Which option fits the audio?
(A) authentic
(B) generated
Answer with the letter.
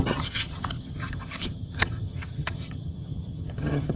B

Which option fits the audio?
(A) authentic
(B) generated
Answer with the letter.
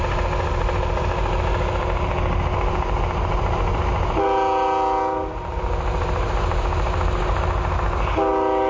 A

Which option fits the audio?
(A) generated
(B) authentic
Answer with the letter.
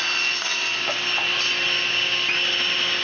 B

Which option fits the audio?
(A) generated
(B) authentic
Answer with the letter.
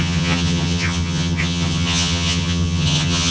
A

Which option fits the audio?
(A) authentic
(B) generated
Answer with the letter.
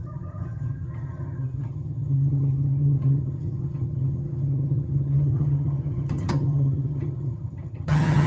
B